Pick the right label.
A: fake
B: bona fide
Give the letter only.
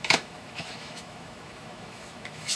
A